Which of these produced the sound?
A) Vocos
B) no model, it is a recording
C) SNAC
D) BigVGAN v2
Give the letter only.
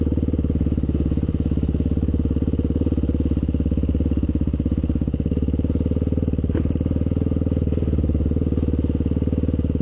B